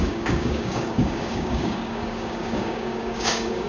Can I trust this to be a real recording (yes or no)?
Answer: no